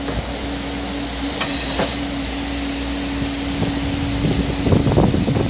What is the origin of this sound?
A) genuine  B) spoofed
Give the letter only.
A